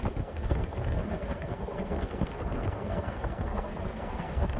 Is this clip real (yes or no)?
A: no